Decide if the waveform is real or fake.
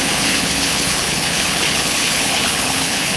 fake